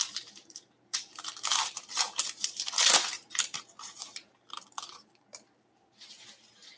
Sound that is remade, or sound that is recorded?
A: remade